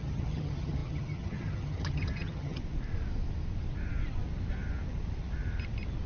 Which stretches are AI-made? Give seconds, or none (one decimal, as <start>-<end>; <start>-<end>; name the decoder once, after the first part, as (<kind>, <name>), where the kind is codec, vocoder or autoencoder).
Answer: 0.0-2.6 (vocoder, HiFi-GAN)